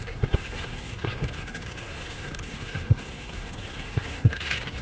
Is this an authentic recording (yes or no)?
no